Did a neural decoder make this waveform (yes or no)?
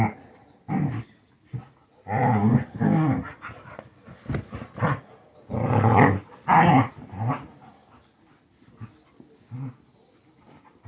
no